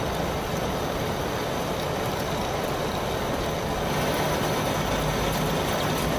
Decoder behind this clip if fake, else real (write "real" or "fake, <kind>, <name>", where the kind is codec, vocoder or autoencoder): real